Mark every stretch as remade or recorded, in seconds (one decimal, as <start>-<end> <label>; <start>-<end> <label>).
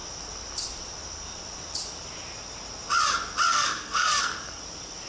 0.0-3.5 recorded; 3.5-4.6 remade; 4.6-5.1 recorded